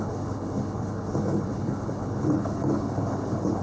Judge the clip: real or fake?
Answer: fake